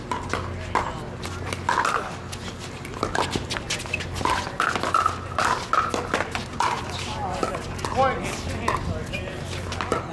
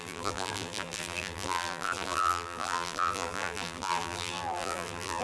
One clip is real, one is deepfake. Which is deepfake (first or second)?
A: second